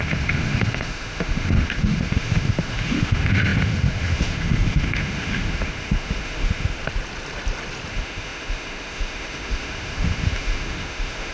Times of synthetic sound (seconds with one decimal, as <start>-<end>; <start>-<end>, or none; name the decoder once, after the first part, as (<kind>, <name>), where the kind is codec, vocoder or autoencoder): 0.0-6.8 (autoencoder, DAC-VAE); 7.9-11.3